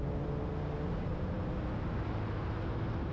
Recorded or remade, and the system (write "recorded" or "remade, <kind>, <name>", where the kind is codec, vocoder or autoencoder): recorded